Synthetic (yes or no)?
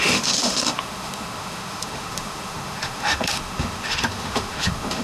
yes